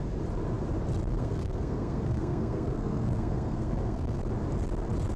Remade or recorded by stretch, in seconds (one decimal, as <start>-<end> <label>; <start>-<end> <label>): 0.0-1.1 recorded; 1.1-4.2 remade; 4.2-5.2 recorded